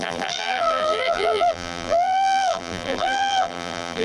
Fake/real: fake